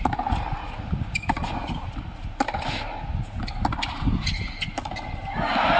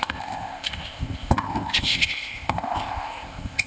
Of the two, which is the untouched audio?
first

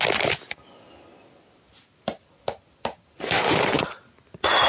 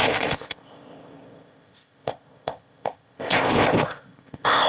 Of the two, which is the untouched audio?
first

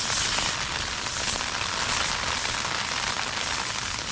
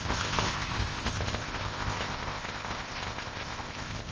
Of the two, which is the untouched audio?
first